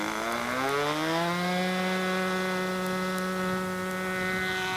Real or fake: real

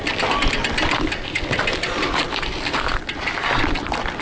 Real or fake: fake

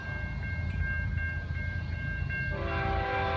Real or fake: real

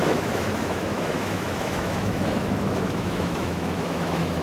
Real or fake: fake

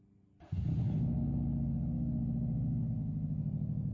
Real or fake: real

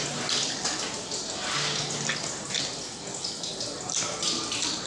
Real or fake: real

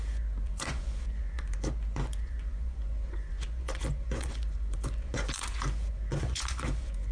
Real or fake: fake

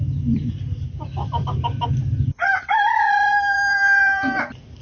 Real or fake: fake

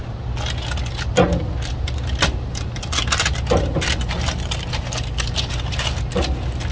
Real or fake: real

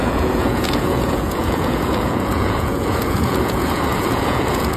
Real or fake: fake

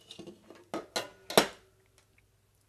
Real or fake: real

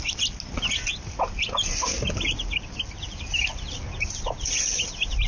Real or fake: real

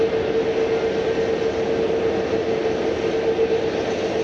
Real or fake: real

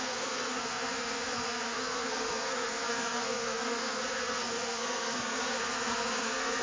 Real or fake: fake